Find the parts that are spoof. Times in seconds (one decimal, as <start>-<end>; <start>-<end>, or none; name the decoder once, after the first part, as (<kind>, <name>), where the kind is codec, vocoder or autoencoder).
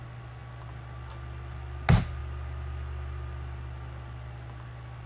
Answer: none